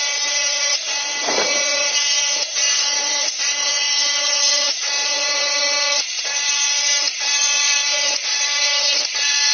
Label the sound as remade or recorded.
remade